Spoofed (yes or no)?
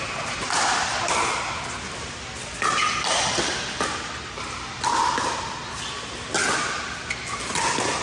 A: no